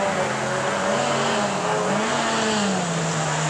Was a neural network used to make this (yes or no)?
no